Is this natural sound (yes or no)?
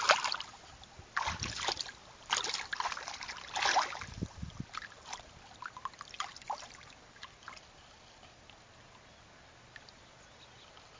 yes